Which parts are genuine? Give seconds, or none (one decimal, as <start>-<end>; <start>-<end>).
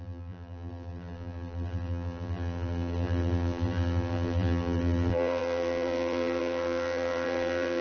none